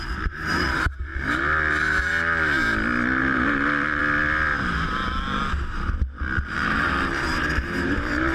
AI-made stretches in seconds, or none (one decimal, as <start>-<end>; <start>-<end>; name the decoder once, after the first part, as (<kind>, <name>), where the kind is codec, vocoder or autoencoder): 0.0-1.1 (vocoder, BigVGAN v2); 3.2-4.0; 5.5-8.3